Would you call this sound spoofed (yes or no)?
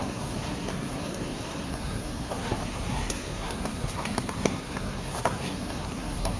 yes